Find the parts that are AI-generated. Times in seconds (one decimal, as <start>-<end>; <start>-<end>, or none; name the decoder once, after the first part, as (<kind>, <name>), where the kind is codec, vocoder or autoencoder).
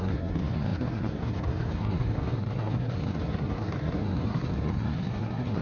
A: 0.0-5.6 (codec, SNAC)